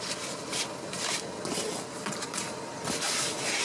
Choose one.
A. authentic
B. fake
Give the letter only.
A